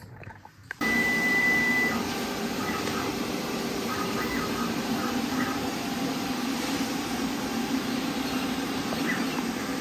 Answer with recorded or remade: remade